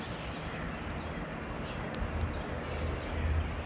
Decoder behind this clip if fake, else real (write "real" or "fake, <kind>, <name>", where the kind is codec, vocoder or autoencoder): real